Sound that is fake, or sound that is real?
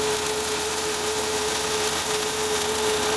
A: real